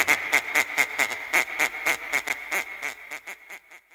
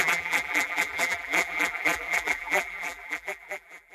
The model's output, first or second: second